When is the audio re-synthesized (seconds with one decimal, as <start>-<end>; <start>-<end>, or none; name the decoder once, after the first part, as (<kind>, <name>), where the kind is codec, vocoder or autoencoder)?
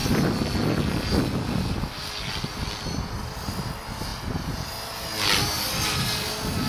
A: none